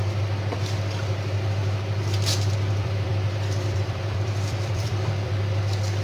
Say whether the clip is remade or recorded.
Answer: remade